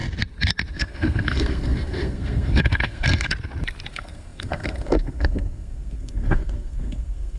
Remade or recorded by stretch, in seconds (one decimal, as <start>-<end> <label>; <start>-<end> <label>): 0.0-0.7 recorded; 0.7-3.3 remade; 3.3-3.9 recorded; 3.9-7.4 remade